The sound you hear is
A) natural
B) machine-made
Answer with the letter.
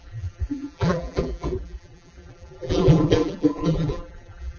B